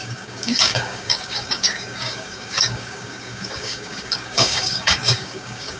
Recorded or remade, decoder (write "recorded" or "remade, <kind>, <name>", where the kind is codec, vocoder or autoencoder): remade, codec, DAC